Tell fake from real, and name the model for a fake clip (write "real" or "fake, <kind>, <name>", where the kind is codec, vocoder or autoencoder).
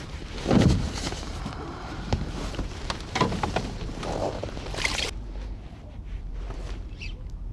fake, vocoder, BigVGAN v2